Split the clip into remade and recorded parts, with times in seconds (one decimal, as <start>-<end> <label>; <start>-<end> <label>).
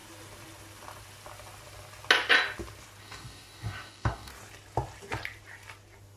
0.0-3.0 recorded; 3.0-4.3 remade; 4.3-6.2 recorded